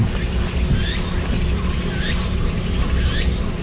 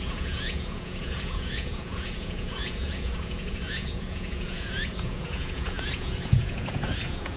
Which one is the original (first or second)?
first